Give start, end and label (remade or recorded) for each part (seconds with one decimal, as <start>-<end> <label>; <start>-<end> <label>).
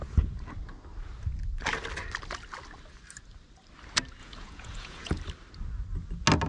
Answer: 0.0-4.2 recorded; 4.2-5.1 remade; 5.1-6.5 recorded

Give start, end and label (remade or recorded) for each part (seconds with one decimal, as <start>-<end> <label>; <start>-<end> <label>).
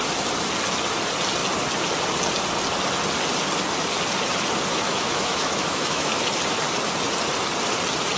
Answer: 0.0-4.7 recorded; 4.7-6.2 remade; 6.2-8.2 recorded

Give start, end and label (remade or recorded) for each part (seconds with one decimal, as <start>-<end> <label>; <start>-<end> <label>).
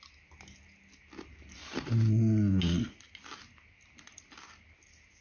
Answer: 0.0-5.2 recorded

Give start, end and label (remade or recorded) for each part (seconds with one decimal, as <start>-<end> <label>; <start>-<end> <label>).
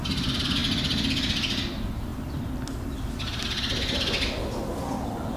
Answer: 0.0-0.6 remade; 0.6-1.7 recorded; 1.7-2.1 remade; 2.1-5.4 recorded